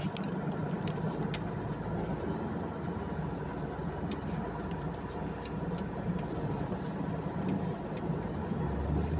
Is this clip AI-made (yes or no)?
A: no